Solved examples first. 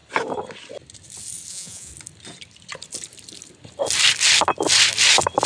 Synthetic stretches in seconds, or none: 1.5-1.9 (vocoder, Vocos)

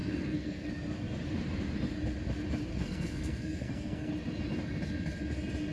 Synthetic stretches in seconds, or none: 0.0-0.7 (codec, SNAC); 2.7-4.1

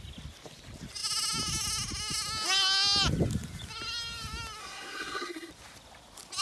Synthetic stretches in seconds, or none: 4.6-5.5 (codec, SNAC)

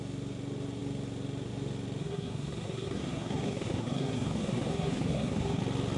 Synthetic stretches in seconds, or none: 2.0-5.6 (codec, SNAC)

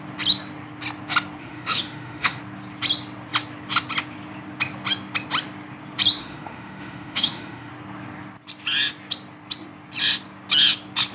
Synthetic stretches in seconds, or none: 1.4-2.4 (autoencoder, DAC-VAE); 6.2-7.7

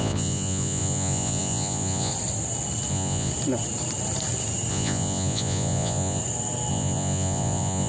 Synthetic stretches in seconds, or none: 0.0-2.1 (vocoder, Vocos); 2.9-3.3; 4.7-6.2; 6.7-7.9